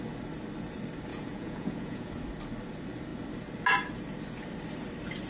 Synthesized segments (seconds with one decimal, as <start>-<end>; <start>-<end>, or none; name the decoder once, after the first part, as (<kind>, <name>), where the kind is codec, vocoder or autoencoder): 1.1-2.1 (vocoder, Vocos)